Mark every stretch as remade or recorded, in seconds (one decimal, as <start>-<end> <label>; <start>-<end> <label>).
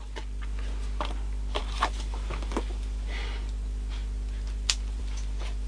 0.0-5.7 recorded